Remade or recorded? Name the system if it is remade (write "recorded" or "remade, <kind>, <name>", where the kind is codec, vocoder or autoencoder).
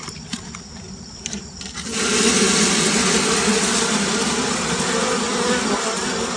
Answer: recorded